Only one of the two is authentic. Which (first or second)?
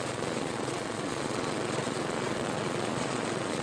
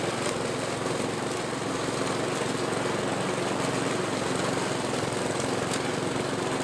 second